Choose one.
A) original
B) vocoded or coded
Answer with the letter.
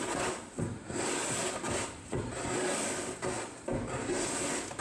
A